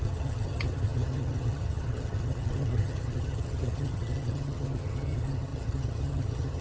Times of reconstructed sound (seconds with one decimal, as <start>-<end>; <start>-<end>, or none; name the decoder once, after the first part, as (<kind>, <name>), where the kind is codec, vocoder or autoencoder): 0.0-6.6 (vocoder, HiFi-GAN)